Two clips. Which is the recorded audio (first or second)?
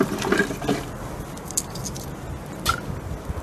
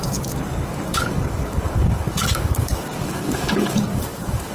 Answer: first